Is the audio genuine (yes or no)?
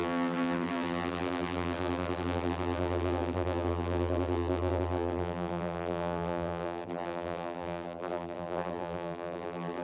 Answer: no